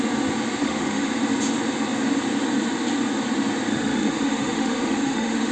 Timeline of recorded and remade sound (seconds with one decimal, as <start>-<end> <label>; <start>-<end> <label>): 0.0-0.6 recorded; 0.6-1.1 remade; 1.1-3.7 recorded; 3.7-5.5 remade

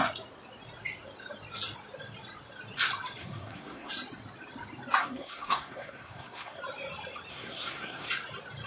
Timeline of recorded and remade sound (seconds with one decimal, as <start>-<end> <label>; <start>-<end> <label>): 0.0-3.2 recorded; 3.2-3.9 remade; 3.9-5.0 recorded; 5.0-6.6 remade; 6.6-7.3 recorded; 7.3-8.1 remade; 8.1-8.7 recorded

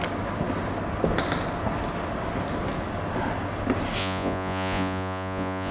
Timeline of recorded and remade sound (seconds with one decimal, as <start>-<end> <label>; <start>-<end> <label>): 0.0-4.0 recorded; 4.0-5.7 remade

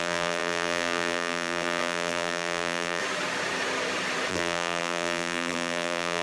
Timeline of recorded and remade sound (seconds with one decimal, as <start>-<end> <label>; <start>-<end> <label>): 0.0-3.0 remade; 3.0-4.3 recorded; 4.3-6.2 remade

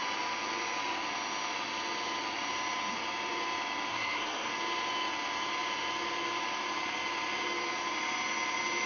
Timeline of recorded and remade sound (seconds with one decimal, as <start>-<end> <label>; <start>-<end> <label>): 0.0-3.9 recorded; 3.9-4.5 remade; 4.5-8.9 recorded

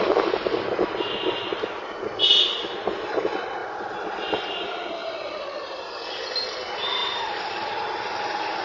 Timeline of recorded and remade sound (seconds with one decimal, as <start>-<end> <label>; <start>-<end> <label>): 0.0-5.0 recorded; 5.0-5.8 remade; 5.8-7.0 recorded; 7.0-8.6 remade

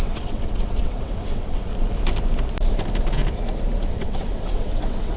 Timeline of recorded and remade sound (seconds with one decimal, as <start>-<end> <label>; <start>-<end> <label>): 0.0-1.7 remade; 1.7-3.9 recorded; 3.9-5.2 remade

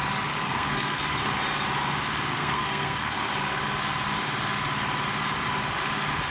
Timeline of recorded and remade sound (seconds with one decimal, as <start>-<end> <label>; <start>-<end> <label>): 0.0-0.4 recorded; 0.4-1.0 remade; 1.0-2.3 recorded; 2.3-3.3 remade; 3.3-6.3 recorded